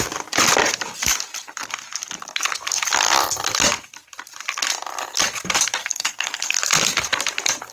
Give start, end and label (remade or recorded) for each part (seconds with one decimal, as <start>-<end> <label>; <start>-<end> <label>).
0.0-5.8 recorded; 5.8-6.6 remade; 6.6-7.7 recorded